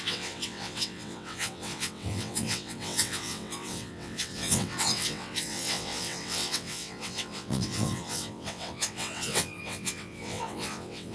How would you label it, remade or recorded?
remade